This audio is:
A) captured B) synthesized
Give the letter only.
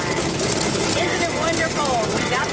A